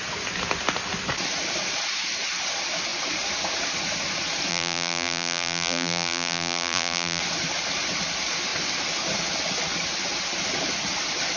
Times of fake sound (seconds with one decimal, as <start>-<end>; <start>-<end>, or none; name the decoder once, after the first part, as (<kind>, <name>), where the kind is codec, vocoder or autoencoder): 4.5-7.2 (vocoder, BigVGAN v2)